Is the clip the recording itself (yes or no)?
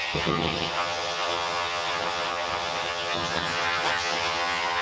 no